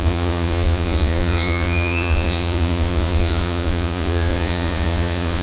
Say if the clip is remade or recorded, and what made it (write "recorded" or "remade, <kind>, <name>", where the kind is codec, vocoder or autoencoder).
remade, vocoder, Vocos